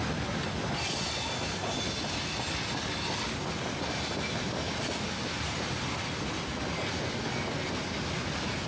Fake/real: real